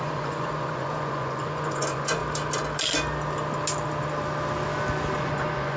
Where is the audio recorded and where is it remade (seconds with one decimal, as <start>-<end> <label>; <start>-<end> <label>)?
0.0-2.2 remade; 2.2-5.2 recorded; 5.2-5.8 remade